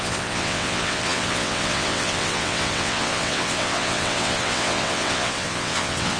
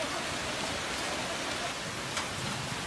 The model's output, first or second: first